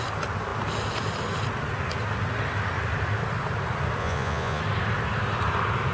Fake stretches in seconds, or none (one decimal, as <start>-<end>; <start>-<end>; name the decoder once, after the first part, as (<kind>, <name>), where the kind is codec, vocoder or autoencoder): 4.0-4.6 (vocoder, Vocos)